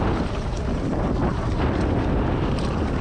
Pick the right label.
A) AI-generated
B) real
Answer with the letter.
B